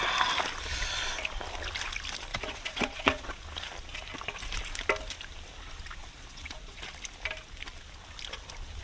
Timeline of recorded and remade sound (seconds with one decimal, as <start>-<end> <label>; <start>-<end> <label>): 0.0-2.3 recorded; 2.3-3.4 remade; 3.4-6.0 recorded; 6.0-6.8 remade; 6.8-8.8 recorded